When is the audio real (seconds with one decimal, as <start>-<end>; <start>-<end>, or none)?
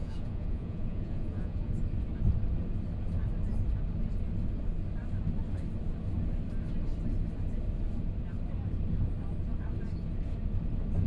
1.7-11.1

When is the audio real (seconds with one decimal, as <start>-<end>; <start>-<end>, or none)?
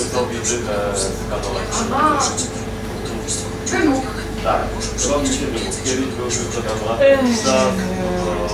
0.0-4.6; 5.7-6.4; 7.0-8.5